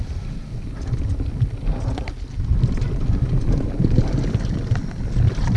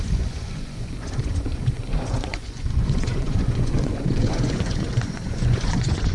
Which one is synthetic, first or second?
second